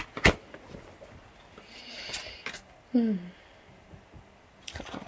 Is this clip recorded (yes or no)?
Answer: yes